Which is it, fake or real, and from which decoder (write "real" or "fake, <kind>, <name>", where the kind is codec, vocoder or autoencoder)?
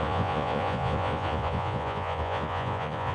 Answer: fake, vocoder, Vocos